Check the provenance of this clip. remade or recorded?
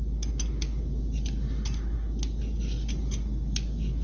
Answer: recorded